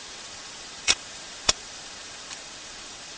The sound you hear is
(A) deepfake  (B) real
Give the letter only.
A